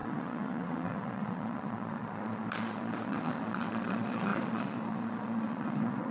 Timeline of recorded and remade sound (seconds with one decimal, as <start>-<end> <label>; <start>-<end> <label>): 0.0-6.1 remade